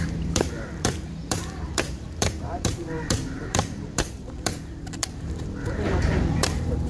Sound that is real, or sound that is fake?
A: fake